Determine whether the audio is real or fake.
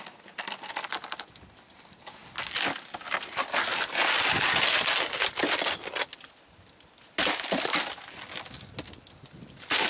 real